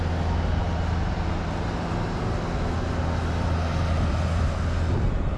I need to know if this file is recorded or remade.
recorded